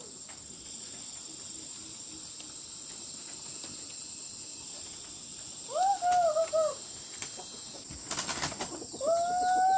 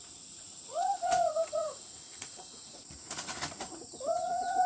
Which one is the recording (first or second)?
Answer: first